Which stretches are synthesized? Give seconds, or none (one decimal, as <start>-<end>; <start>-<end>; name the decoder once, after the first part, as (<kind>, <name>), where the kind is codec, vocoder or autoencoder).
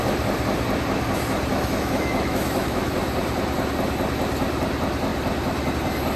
1.5-2.9 (autoencoder, DAC-VAE)